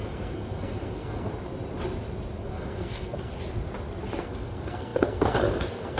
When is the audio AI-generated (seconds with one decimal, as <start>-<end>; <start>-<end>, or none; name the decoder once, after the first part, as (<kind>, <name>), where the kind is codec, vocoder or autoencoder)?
0.0-1.3 (codec, SNAC); 2.5-3.3; 4.2-6.0